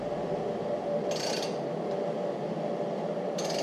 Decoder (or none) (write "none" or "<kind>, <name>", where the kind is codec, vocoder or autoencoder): none